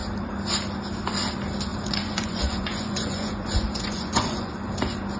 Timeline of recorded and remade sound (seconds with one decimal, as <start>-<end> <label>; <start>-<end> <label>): 0.0-1.7 recorded; 1.7-4.5 remade; 4.5-5.2 recorded